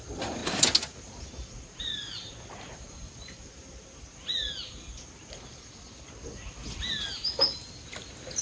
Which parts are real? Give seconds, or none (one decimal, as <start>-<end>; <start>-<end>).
0.4-1.8; 3.6-8.4